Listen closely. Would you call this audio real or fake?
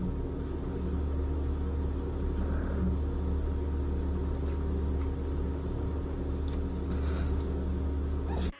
real